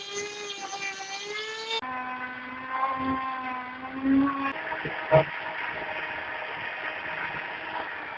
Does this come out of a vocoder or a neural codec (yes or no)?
no